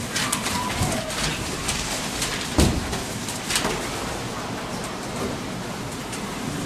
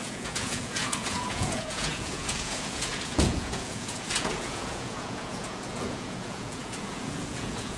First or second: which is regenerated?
second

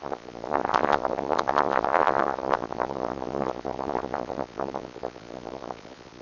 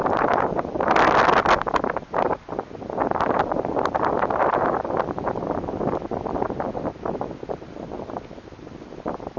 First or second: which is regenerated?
first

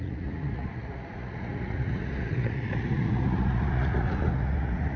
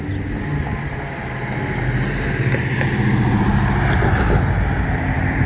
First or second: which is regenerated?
first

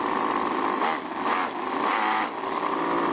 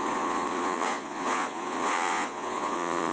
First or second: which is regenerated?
second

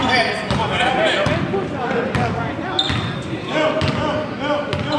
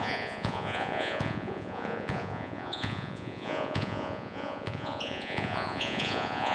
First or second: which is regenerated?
second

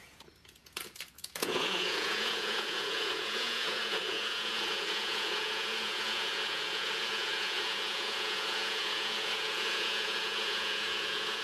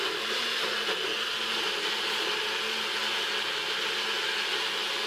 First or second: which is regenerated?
first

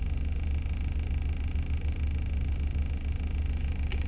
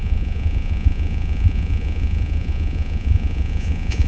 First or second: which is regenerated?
second